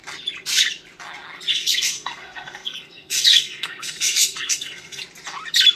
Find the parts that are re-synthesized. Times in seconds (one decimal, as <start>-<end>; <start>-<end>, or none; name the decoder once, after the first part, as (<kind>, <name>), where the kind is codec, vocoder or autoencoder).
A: 1.5-5.0 (codec, SNAC)